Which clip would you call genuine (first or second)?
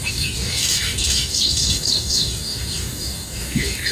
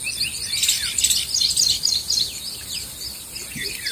second